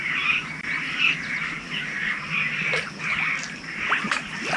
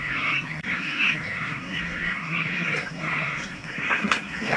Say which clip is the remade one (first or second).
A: second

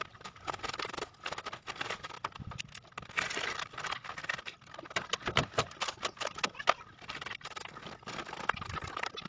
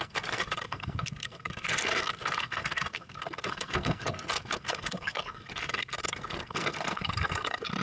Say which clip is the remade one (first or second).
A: second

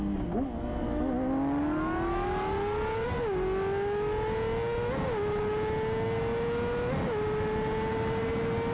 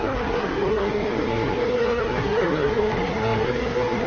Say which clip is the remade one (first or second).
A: second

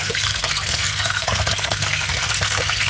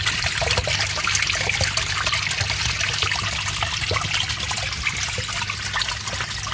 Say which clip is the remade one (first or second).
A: first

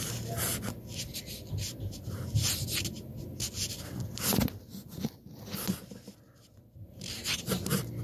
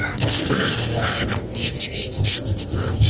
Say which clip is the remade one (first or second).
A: second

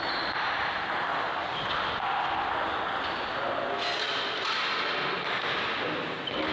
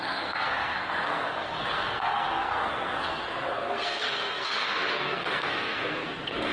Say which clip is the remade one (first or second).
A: second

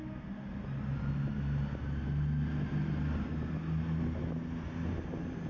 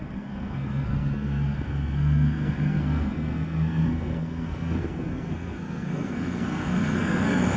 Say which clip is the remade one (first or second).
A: second